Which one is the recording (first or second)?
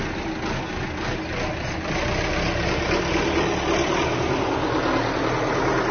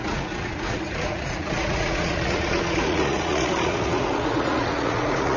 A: first